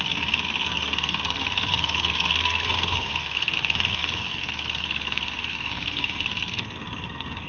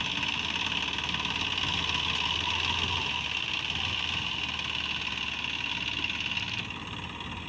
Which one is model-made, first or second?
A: first